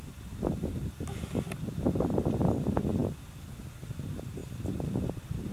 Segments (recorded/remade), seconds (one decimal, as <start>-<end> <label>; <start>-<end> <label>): 0.0-5.5 recorded